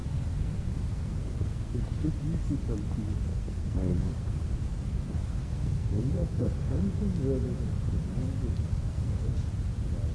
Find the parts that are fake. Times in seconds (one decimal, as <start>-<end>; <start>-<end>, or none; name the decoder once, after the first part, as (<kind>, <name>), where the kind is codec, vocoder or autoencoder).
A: 0.0-2.1 (codec, SNAC); 3.3-7.0; 8.6-9.4